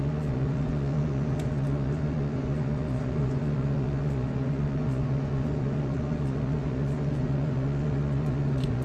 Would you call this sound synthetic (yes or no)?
yes